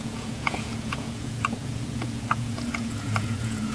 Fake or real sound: fake